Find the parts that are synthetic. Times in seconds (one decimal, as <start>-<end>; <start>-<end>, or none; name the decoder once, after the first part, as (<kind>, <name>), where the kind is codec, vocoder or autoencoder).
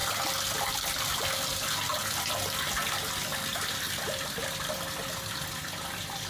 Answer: none